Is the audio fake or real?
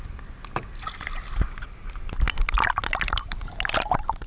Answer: real